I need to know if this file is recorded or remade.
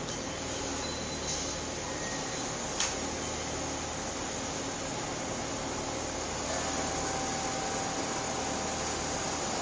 recorded